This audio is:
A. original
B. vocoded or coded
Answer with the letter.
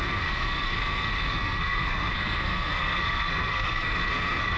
B